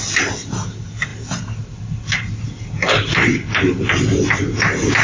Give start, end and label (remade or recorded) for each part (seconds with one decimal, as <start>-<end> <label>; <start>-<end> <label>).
0.0-5.0 recorded